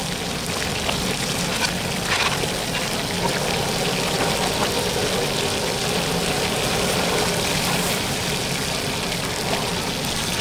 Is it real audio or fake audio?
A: real